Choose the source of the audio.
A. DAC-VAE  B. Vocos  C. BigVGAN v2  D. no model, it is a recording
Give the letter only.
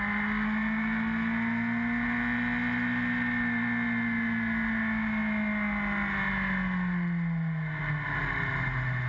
D